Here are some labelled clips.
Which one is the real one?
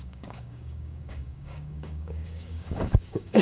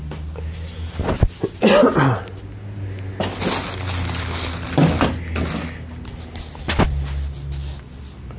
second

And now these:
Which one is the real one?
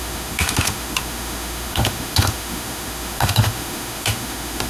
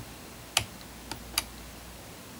second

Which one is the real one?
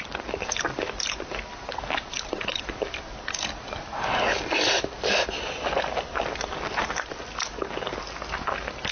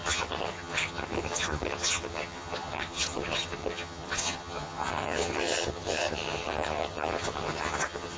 first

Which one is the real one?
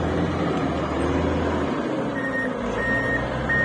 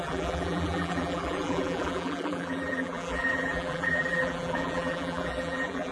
first